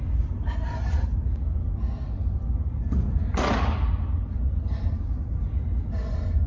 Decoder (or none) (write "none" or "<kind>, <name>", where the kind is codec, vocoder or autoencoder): none